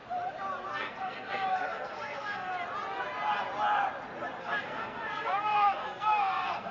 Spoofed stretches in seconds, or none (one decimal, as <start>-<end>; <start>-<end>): 0.7-2.5; 4.4-6.7